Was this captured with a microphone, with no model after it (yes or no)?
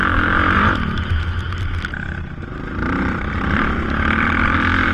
yes